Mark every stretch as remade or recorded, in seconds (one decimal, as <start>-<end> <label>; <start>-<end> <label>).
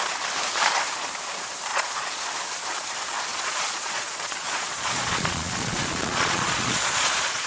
0.0-1.7 recorded; 1.7-2.2 remade; 2.2-3.3 recorded; 3.3-7.5 remade